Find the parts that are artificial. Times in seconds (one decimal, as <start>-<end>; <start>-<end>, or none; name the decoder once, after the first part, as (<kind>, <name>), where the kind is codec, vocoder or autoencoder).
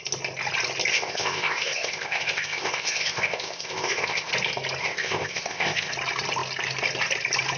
0.9-4.3 (codec, ZipCodec); 4.8-5.9